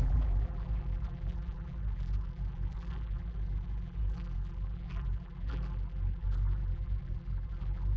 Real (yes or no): no